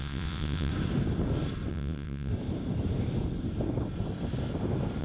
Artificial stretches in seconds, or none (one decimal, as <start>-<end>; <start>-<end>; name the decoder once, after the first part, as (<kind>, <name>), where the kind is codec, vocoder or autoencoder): 0.0-0.7 (vocoder, WaveNeXt); 1.7-2.3